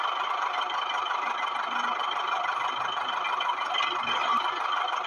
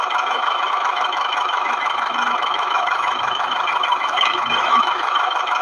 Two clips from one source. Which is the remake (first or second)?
second